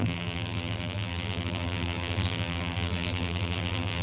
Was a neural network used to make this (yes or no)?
yes